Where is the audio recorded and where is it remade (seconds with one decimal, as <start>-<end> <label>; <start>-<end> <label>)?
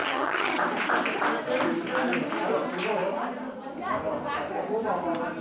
0.0-0.6 remade; 0.6-5.4 recorded